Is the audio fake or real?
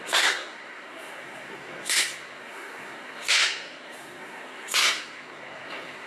fake